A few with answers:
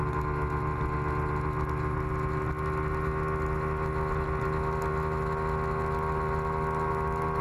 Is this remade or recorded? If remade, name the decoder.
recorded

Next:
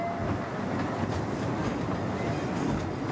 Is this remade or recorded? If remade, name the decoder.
recorded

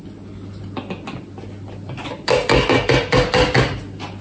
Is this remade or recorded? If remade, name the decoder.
recorded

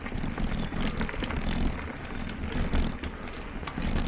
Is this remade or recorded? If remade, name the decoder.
recorded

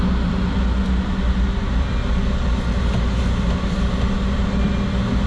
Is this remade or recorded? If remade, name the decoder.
recorded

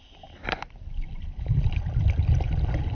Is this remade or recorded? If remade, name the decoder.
recorded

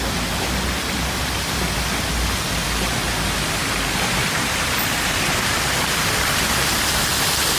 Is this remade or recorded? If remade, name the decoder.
recorded